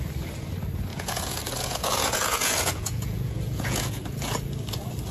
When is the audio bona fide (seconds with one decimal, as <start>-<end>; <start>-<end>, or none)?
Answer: 0.0-0.9; 4.0-5.1